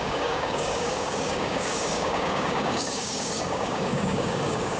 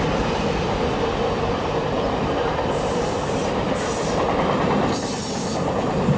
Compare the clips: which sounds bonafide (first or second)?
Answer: second